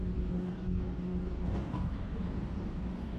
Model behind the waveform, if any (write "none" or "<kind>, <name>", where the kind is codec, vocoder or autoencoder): codec, DAC